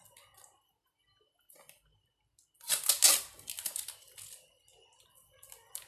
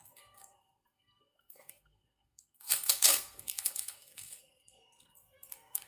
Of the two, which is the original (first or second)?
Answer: first